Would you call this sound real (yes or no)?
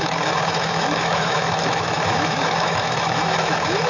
no